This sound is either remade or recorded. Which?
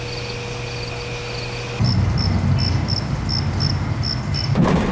recorded